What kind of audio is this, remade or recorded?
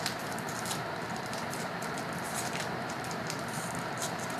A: remade